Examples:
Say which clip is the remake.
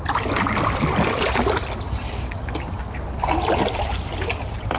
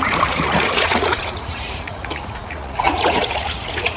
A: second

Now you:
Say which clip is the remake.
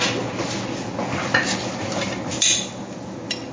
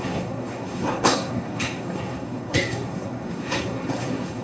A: second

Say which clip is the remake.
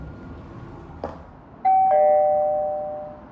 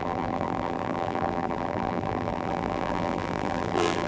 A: second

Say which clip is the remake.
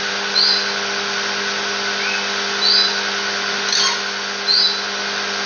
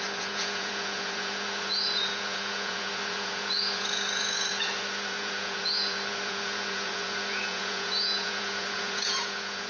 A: second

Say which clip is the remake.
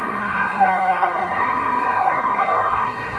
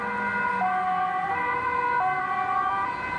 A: first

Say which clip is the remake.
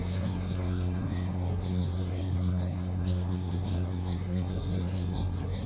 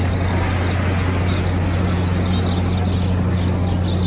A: first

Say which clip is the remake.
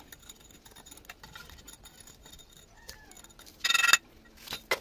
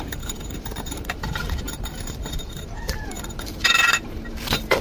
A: second